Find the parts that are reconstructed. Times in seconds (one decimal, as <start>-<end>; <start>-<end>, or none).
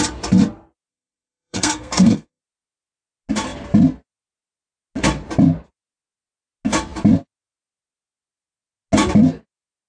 0.9-2.4